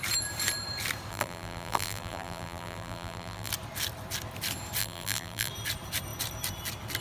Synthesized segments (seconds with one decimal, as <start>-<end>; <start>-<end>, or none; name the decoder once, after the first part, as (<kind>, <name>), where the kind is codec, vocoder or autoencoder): 1.1-3.5 (vocoder, BigVGAN v2); 4.8-5.5